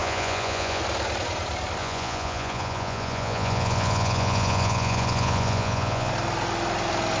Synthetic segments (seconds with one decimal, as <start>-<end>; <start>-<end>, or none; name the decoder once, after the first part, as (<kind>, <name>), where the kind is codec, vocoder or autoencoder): 0.0-0.8 (vocoder, Vocos); 1.8-6.1